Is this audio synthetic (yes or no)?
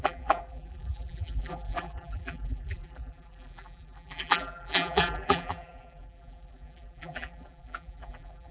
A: yes